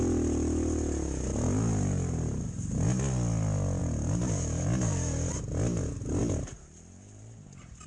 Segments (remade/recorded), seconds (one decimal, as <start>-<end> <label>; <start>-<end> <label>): 0.0-7.9 recorded